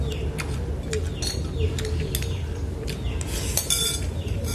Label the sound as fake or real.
real